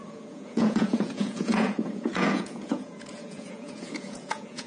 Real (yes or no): no